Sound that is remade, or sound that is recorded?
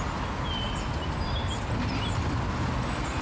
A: recorded